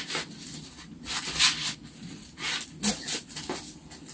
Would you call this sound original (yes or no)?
yes